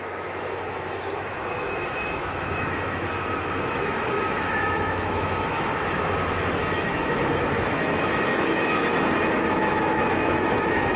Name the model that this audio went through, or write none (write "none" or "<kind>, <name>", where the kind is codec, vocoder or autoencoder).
autoencoder, DAC-VAE